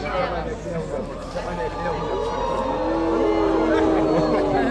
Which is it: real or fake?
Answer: real